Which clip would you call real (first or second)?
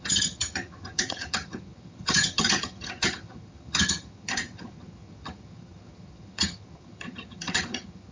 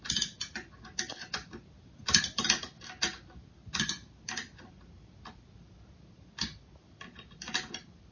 second